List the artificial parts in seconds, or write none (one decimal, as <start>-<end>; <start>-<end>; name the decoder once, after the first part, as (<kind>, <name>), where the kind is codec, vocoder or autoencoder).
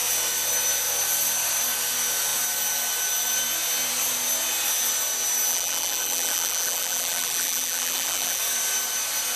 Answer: 5.5-8.4 (vocoder, BigVGAN v2)